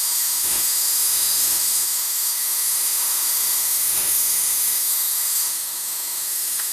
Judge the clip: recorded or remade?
remade